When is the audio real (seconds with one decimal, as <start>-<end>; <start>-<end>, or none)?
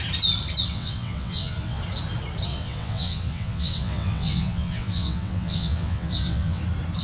0.0-0.7; 1.8-2.5; 6.6-7.0